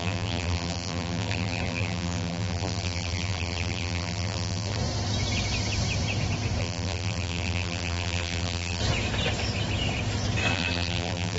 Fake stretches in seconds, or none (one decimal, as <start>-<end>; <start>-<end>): 0.0-4.8; 6.6-8.8; 10.5-11.4